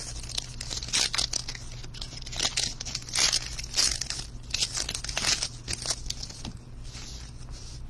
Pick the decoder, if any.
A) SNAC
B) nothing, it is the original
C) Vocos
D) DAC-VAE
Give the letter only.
B